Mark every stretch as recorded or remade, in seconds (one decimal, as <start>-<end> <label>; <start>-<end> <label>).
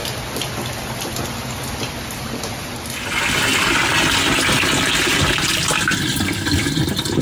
0.0-5.1 recorded; 5.1-7.2 remade